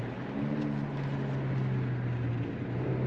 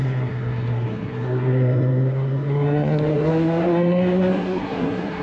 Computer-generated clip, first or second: second